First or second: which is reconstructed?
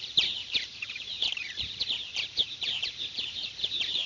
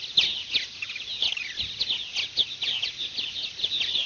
first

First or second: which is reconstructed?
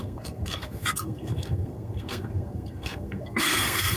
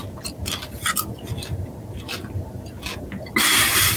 first